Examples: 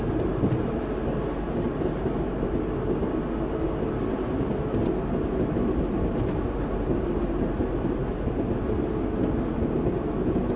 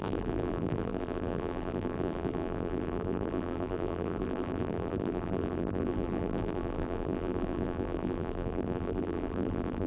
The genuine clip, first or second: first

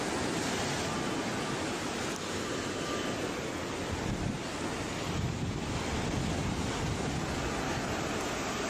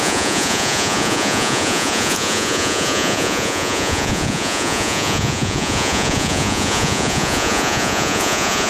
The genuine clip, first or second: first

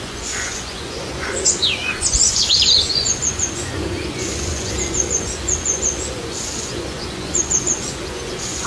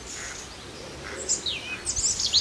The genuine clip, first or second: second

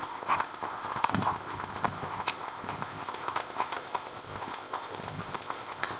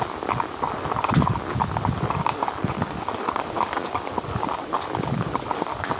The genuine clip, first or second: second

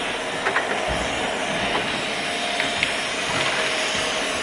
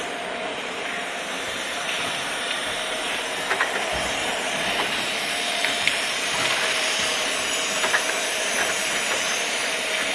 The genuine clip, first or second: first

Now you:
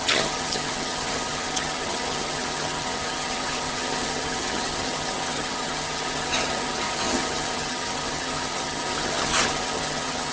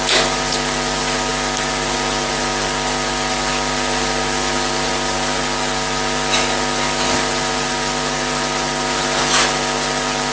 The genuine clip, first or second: second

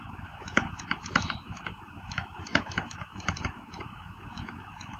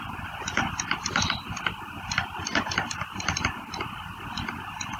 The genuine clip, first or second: second